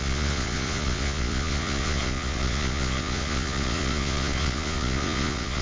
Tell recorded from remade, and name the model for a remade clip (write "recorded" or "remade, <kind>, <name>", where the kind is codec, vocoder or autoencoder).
remade, vocoder, Vocos